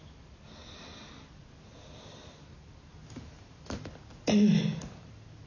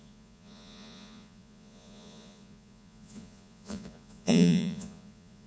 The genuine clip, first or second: first